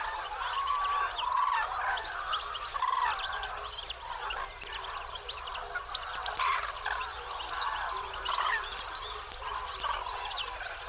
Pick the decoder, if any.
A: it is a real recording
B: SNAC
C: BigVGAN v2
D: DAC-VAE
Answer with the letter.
C